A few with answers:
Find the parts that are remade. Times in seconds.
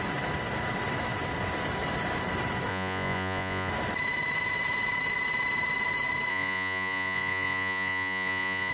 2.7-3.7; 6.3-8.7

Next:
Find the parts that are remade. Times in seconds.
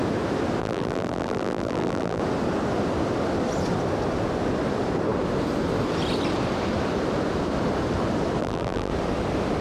0.6-2.2; 8.4-8.9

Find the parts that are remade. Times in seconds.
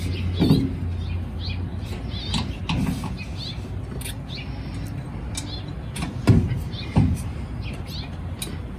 none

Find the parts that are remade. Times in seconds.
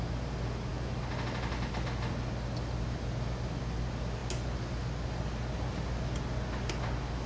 none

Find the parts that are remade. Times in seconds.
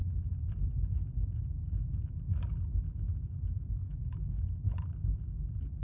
1.9-2.5; 3.8-4.4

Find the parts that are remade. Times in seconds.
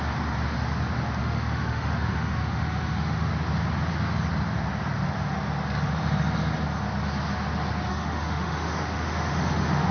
1.2-3.3; 7.9-9.9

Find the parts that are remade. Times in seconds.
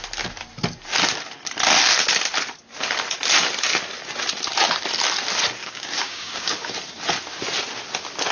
5.6-6.7